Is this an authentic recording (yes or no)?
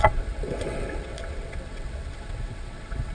no